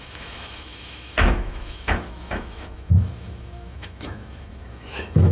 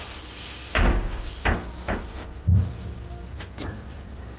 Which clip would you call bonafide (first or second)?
second